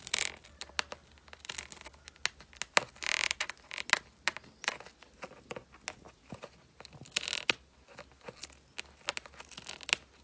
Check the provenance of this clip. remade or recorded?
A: recorded